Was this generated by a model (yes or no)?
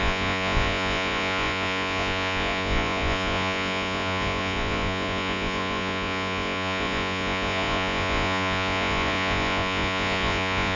yes